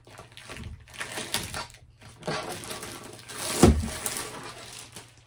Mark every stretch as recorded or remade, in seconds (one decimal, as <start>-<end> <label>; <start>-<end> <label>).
0.0-5.3 recorded